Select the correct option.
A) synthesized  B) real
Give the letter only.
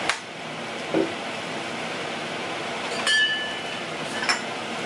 A